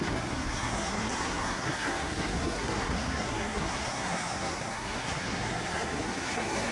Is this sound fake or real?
fake